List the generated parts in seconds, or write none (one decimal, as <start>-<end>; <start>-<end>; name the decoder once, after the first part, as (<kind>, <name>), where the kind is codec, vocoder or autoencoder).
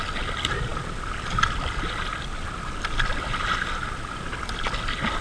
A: none